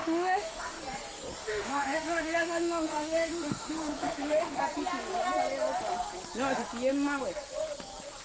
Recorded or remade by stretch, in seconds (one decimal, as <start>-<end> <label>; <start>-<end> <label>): 0.0-0.8 remade; 0.8-1.4 recorded; 1.4-4.6 remade; 4.6-8.2 recorded